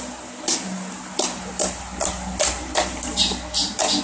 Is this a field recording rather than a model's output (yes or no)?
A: yes